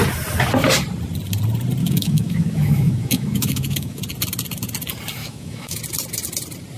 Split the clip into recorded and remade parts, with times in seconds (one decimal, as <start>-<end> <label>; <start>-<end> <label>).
0.0-1.8 recorded; 1.8-4.0 remade; 4.0-5.2 recorded; 5.2-5.8 remade; 5.8-6.8 recorded